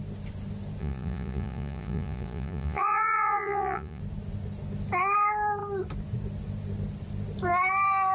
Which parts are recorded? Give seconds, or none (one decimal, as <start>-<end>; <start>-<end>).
0.0-0.8; 4.0-8.1